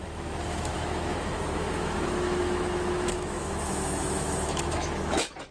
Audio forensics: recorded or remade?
remade